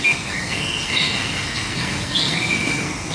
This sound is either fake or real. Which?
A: fake